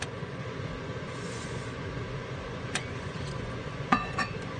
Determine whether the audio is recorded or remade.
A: remade